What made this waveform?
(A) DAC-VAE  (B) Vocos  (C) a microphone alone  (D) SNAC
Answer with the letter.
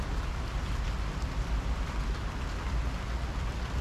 C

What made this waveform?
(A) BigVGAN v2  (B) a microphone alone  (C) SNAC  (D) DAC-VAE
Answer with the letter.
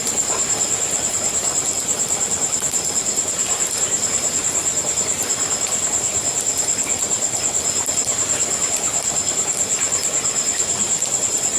A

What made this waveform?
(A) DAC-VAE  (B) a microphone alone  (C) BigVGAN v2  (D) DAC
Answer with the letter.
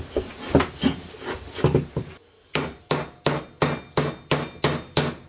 B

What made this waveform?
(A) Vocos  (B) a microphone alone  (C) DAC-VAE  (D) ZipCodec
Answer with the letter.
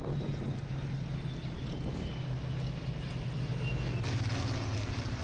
B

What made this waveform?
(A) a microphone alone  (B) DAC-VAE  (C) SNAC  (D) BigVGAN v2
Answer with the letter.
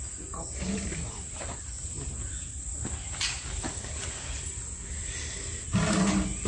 A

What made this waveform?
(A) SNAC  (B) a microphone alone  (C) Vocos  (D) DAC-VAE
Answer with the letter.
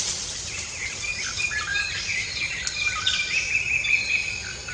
B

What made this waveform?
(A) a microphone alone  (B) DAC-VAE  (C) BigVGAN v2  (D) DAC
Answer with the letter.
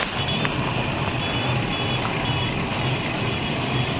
A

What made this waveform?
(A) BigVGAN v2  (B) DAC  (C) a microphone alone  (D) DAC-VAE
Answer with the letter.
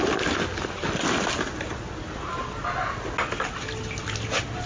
C